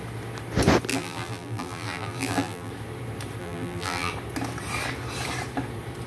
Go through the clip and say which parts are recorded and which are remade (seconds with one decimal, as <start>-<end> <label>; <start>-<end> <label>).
0.0-0.9 recorded; 0.9-2.7 remade; 2.7-3.4 recorded; 3.4-4.1 remade; 4.1-6.1 recorded